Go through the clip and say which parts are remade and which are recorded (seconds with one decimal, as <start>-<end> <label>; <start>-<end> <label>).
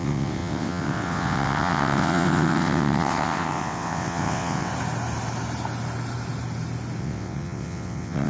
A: 0.0-4.7 remade; 4.7-7.0 recorded; 7.0-8.3 remade